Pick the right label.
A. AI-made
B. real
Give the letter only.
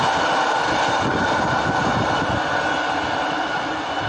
B